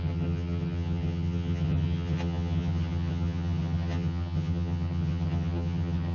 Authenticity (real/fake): fake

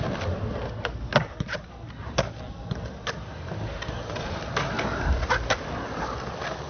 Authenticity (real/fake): real